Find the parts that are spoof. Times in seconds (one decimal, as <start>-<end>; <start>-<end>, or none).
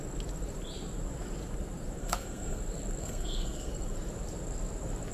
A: 2.0-2.6; 3.0-3.7